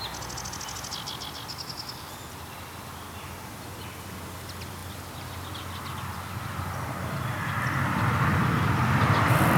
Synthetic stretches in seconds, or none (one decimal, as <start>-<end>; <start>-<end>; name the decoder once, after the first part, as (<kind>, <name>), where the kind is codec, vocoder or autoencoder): none